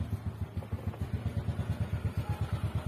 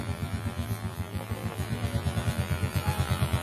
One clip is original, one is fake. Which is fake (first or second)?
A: second